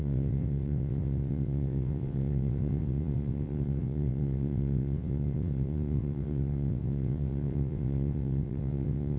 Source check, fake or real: fake